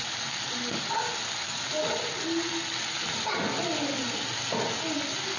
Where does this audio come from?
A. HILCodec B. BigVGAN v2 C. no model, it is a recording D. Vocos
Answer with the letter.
C